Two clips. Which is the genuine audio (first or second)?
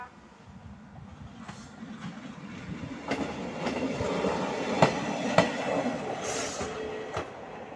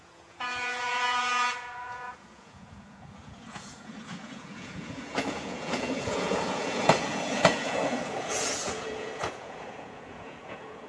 first